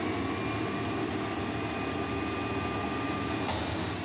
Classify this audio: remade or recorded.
recorded